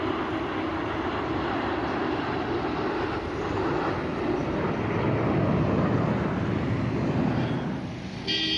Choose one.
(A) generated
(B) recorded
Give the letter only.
B